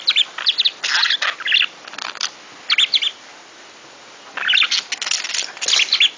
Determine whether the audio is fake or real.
real